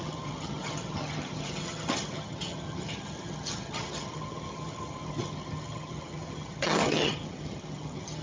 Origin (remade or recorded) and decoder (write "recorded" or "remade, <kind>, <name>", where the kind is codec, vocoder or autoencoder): remade, vocoder, HiFi-GAN